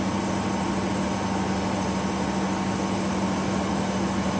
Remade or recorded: recorded